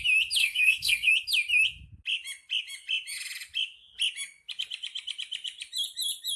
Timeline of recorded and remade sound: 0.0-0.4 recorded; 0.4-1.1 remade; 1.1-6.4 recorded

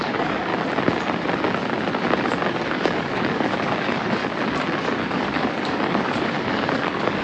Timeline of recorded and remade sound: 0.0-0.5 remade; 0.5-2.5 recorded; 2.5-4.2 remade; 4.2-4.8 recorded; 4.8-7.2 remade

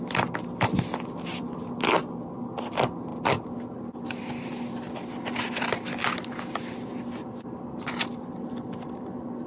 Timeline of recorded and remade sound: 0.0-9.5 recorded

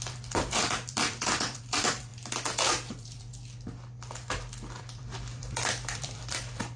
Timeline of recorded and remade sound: 0.0-2.1 remade; 2.1-2.9 recorded; 2.9-3.3 remade; 3.3-4.8 recorded; 4.8-6.8 remade

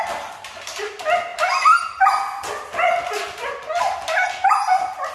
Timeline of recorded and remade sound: 0.0-5.1 recorded

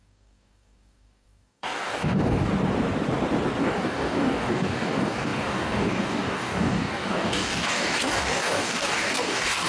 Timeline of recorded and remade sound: 0.0-2.5 remade; 2.5-3.6 recorded; 3.6-9.7 remade

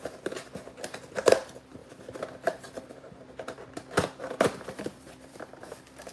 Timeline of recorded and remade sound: 0.0-6.1 remade

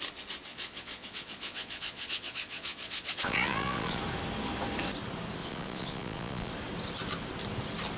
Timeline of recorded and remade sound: 0.0-0.5 recorded; 0.5-4.0 remade; 4.0-5.4 recorded; 5.4-6.5 remade; 6.5-8.0 recorded